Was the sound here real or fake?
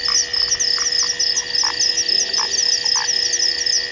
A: real